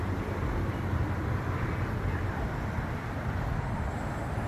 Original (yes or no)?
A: yes